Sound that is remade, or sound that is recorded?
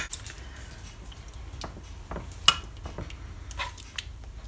recorded